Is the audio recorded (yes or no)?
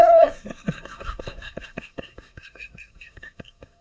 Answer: no